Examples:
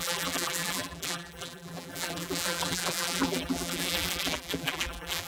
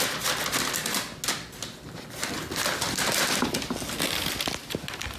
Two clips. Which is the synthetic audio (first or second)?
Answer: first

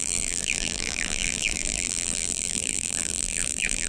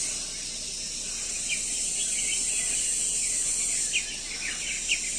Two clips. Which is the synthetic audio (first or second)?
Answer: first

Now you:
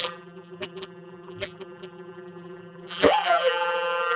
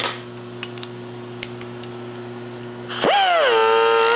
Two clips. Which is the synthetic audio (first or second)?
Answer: first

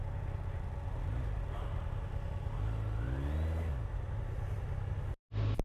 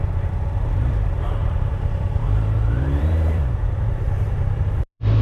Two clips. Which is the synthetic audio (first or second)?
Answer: second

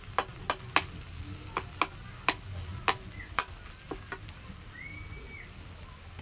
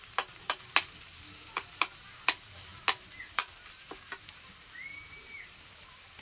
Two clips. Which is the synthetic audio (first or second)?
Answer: second